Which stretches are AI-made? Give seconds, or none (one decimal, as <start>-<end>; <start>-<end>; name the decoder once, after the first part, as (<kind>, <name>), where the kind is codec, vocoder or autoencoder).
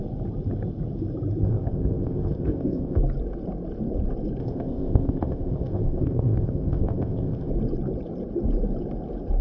1.4-3.0 (codec, ZipCodec); 4.4-7.5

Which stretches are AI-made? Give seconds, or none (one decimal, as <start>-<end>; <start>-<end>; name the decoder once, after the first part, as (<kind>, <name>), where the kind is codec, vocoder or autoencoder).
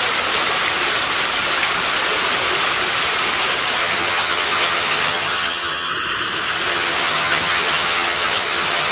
3.8-5.9 (vocoder, HiFi-GAN); 6.7-8.9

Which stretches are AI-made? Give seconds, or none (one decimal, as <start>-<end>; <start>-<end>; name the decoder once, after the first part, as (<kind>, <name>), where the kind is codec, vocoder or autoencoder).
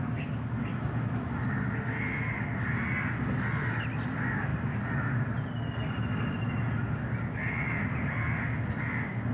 none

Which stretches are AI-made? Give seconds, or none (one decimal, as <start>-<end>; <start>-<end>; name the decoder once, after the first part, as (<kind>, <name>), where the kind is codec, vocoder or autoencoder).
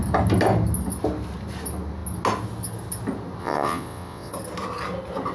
3.4-4.3 (vocoder, WaveNeXt)